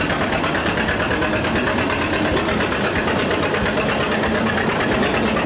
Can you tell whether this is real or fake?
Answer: real